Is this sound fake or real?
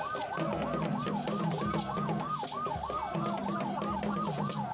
real